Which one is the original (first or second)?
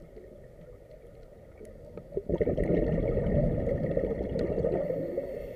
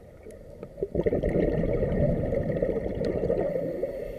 first